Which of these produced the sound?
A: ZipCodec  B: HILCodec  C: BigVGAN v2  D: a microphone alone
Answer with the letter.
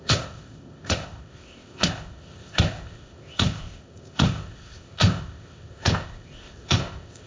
A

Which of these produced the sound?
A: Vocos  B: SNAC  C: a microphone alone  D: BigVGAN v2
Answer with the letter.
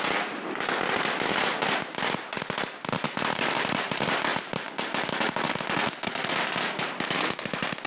C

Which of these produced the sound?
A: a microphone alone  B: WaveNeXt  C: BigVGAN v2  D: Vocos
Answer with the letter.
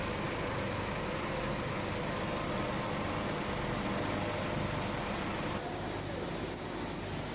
A